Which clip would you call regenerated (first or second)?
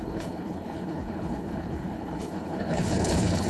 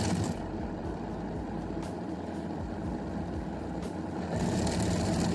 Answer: first